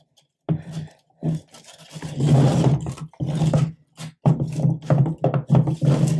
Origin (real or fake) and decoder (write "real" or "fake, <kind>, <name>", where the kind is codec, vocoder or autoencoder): real